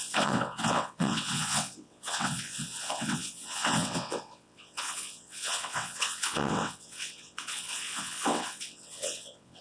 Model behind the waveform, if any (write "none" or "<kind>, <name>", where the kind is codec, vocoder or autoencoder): vocoder, WaveNeXt